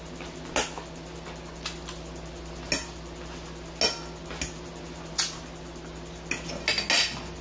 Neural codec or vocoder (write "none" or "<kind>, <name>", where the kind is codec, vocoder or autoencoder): none